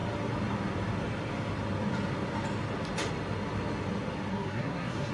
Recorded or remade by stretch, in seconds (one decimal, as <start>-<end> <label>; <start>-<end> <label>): 0.0-4.3 recorded; 4.3-5.1 remade